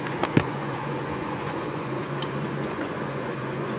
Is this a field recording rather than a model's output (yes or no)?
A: no